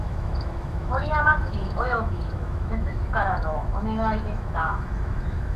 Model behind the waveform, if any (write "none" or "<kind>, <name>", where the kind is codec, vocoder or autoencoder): autoencoder, DAC-VAE